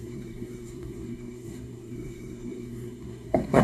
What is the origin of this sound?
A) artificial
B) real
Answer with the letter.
A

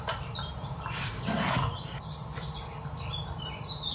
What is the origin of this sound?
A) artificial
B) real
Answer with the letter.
A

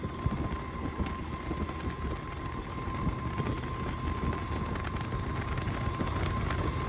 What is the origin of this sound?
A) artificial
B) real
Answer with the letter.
B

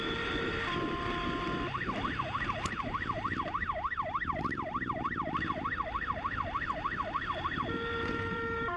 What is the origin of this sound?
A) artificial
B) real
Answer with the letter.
A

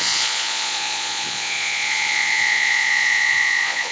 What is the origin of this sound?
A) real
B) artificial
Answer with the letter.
B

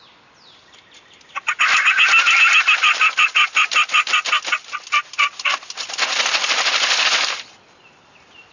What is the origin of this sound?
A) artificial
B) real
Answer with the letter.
B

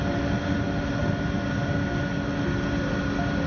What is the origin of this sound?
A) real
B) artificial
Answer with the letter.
A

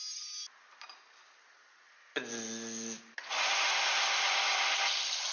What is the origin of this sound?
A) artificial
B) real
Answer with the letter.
B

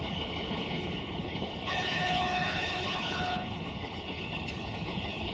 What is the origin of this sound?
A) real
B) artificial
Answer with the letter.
B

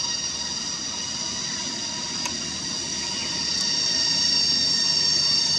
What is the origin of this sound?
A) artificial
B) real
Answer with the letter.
B